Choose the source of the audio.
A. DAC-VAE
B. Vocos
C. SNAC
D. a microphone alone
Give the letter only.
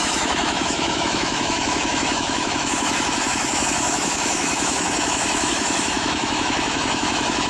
A